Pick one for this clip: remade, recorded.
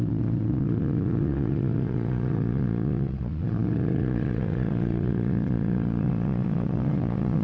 remade